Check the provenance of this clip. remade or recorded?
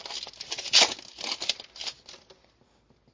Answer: recorded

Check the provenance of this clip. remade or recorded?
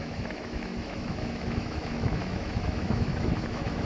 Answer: remade